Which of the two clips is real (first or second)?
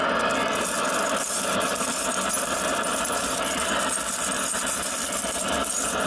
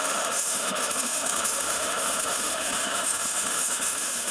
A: first